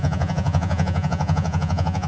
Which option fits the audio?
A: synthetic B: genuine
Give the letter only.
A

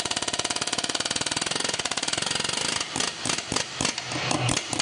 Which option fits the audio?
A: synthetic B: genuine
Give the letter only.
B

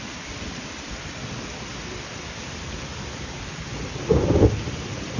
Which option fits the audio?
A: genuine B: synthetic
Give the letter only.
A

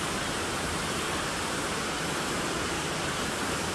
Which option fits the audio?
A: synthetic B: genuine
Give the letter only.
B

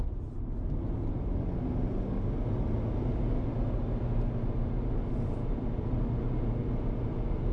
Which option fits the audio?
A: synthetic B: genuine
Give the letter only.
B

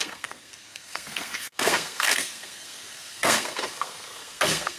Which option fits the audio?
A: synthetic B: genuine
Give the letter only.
A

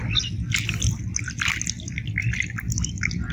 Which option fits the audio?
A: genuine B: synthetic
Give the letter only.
A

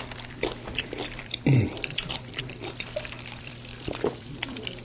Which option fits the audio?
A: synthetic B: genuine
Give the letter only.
A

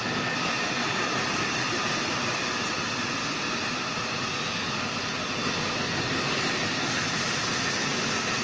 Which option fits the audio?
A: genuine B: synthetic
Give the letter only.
A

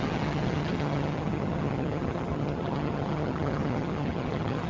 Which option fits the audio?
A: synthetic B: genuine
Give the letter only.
A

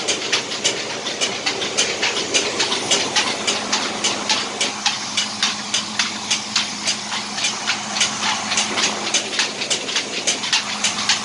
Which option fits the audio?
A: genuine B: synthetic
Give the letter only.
A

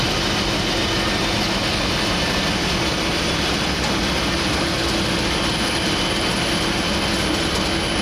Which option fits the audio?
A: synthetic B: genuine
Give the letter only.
B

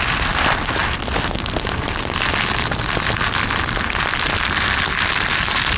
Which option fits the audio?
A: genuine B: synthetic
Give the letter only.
A